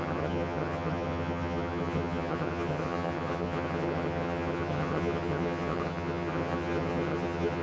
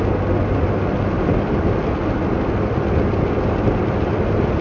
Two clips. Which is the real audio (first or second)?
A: second